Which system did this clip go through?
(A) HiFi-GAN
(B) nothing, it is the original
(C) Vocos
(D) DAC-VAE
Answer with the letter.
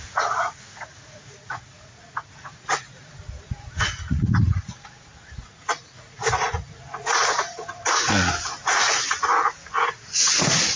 C